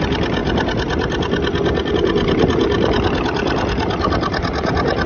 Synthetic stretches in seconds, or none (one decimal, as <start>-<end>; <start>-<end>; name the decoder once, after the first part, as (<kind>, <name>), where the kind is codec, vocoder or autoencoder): none